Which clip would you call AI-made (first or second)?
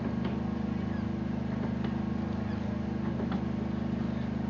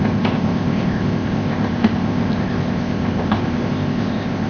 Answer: second